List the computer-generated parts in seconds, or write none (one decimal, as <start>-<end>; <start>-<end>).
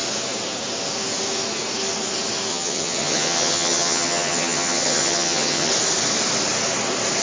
2.5-5.7